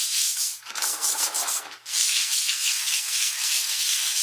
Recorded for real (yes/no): no